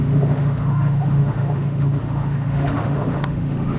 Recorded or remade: remade